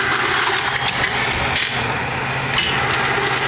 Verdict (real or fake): real